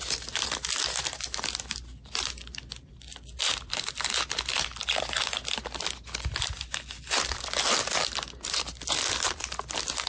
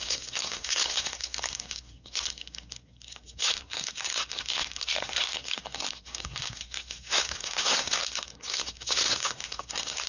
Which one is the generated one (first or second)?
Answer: second